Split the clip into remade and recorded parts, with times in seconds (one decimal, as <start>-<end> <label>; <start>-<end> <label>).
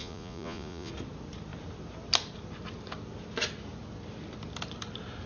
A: 0.0-0.9 remade; 0.9-5.3 recorded